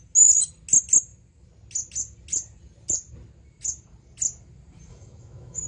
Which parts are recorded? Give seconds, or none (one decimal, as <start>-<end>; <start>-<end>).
0.0-4.9